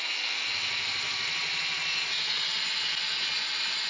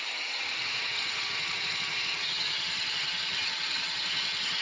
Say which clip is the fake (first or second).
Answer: second